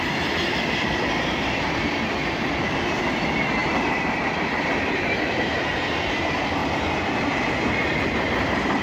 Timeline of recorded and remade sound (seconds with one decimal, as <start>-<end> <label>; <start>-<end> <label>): 0.0-8.8 remade